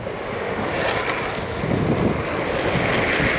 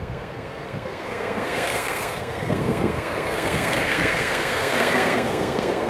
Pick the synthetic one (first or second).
second